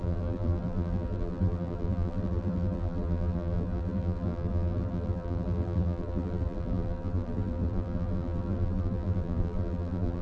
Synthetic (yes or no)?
yes